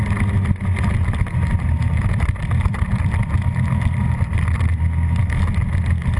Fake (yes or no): no